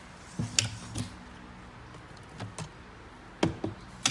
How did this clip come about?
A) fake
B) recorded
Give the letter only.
B